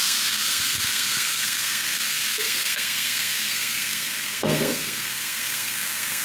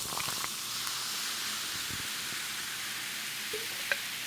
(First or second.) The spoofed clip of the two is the first